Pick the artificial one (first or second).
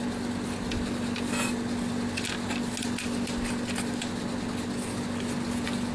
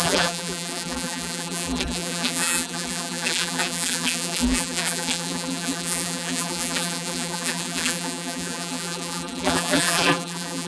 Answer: second